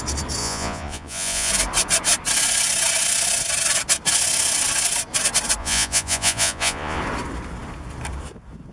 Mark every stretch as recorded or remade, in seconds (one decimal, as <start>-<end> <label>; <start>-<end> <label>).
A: 0.0-0.4 recorded; 0.4-1.5 remade; 1.5-5.6 recorded; 5.6-7.0 remade; 7.0-8.7 recorded